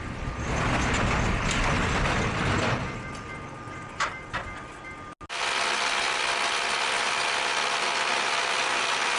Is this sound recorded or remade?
recorded